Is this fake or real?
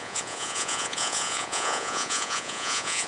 fake